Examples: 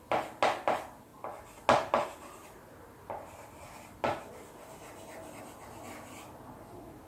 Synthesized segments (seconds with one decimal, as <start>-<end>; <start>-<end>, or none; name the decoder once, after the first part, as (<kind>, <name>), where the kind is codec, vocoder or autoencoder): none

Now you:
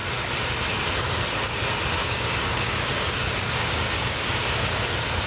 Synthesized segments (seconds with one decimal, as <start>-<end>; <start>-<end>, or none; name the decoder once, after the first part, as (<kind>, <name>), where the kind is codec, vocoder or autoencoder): 2.0-5.3 (codec, DAC)

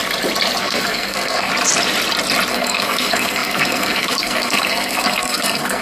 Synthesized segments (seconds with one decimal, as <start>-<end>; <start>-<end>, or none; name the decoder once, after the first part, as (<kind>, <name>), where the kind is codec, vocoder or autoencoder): 0.6-1.5 (codec, SNAC); 2.5-5.8

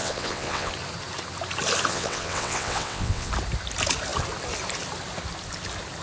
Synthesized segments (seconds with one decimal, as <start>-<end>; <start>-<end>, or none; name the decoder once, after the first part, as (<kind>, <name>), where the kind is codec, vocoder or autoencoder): 0.0-0.7 (vocoder, WaveNeXt); 1.9-3.3

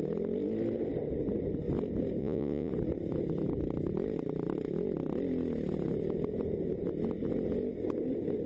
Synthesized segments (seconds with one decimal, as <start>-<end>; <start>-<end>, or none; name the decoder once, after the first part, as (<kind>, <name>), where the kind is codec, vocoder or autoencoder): 2.2-2.7 (vocoder, Vocos)

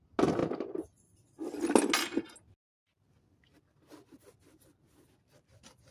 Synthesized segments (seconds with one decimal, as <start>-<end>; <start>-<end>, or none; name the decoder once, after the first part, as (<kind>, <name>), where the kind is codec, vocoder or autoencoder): none

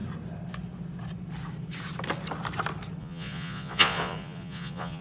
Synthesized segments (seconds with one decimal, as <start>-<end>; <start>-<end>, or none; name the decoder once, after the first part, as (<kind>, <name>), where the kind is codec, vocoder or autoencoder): 3.0-5.0 (vocoder, Vocos)

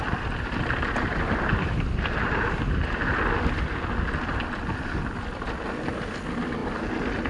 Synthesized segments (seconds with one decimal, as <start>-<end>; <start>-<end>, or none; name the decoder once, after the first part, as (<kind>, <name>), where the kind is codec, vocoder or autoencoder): none